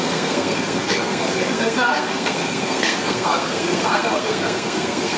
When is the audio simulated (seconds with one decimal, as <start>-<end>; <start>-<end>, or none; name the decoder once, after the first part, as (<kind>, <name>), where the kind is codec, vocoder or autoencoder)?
0.0-5.2 (codec, SNAC)